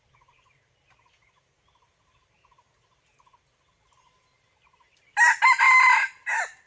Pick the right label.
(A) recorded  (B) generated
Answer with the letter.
A